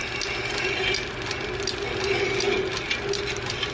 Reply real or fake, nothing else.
real